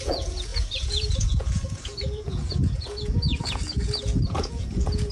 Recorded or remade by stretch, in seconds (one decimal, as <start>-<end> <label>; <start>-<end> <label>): 0.0-5.1 remade